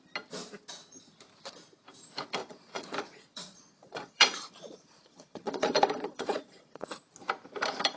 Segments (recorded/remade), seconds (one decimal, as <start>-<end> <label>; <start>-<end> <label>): 0.0-2.4 recorded; 2.4-6.9 remade; 6.9-8.0 recorded